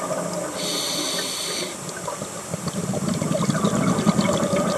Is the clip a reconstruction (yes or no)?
no